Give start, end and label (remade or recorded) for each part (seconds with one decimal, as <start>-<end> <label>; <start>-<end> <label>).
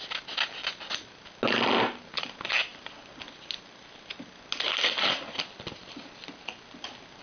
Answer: 0.0-7.2 recorded